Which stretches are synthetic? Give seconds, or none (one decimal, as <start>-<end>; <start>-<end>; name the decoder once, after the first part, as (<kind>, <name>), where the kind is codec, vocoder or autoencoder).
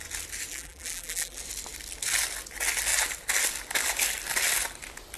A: 0.5-1.4 (vocoder, BigVGAN v2)